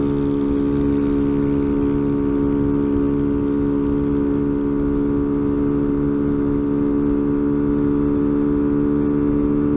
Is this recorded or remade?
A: recorded